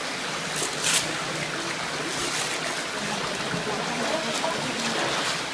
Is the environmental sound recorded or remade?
recorded